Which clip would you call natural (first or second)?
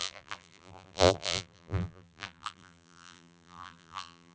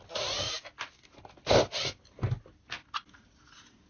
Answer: second